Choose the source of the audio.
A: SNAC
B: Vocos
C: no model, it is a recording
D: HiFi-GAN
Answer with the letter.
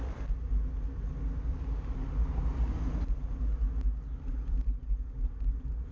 C